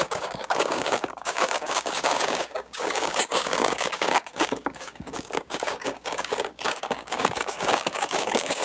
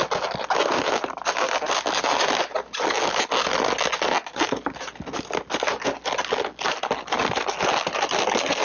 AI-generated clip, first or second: first